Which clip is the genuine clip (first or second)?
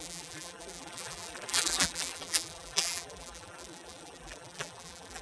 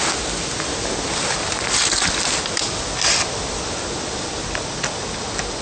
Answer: second